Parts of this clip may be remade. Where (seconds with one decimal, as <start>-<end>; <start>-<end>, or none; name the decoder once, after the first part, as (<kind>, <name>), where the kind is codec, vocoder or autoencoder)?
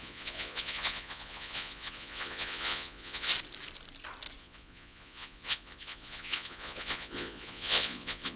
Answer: 0.0-3.3 (vocoder, Vocos); 4.4-8.4